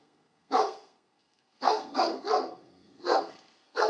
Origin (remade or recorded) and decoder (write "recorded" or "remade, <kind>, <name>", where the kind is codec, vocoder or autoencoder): remade, codec, SNAC